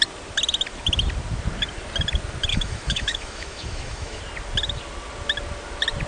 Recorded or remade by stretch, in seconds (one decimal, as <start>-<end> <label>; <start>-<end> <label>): 0.0-2.5 recorded; 2.5-4.2 remade; 4.2-6.1 recorded